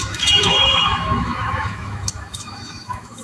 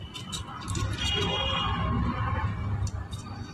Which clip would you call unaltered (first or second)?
second